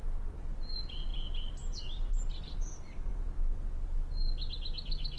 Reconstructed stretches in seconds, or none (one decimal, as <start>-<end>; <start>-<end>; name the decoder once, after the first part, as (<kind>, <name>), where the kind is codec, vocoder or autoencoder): none